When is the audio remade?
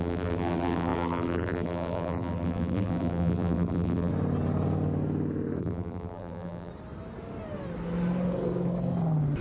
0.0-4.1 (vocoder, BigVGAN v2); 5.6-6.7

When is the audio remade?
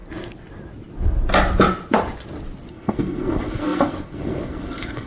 2.7-5.1 (codec, SNAC)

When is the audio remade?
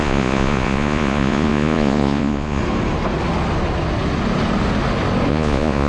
0.0-2.6 (vocoder, Vocos); 5.3-5.9